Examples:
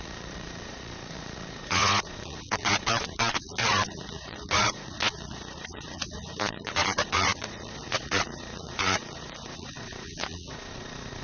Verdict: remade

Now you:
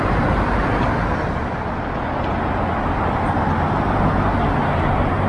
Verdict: recorded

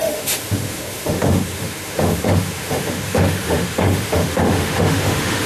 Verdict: remade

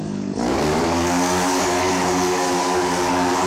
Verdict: remade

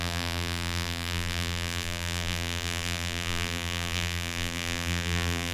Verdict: remade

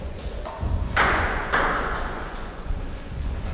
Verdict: remade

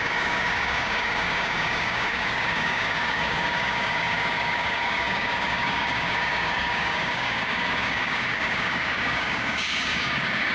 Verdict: remade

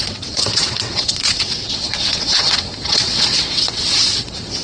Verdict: remade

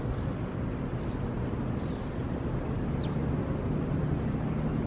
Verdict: recorded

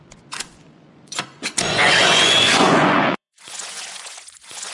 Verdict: remade